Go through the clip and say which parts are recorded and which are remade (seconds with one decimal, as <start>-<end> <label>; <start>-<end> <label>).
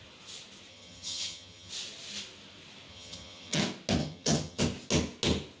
0.0-0.7 recorded; 0.7-1.7 remade; 1.7-2.9 recorded; 2.9-3.6 remade; 3.6-4.0 recorded; 4.0-4.6 remade; 4.6-5.6 recorded